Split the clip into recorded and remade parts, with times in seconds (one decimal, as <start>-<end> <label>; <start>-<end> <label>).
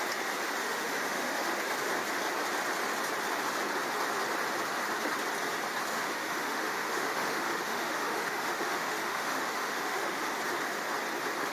0.0-0.6 recorded; 0.6-1.5 remade; 1.5-5.9 recorded; 5.9-10.3 remade; 10.3-11.5 recorded